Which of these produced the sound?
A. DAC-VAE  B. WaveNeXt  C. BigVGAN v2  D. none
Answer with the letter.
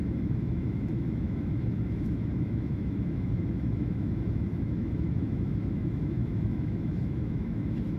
A